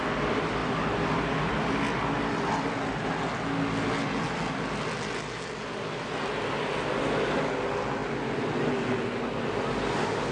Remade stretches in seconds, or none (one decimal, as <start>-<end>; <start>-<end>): none